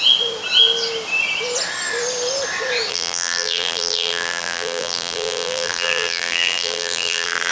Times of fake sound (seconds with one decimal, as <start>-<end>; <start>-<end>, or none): 2.9-7.5